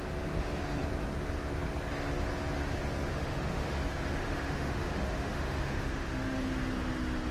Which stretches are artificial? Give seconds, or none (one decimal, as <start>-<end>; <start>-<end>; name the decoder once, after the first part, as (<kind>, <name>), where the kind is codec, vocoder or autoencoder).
3.1-3.8 (autoencoder, DAC-VAE); 4.2-6.4